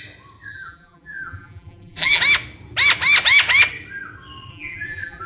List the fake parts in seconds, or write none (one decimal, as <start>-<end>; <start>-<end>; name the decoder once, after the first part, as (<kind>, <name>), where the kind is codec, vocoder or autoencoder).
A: 0.5-2.2 (vocoder, BigVGAN v2); 4.5-5.3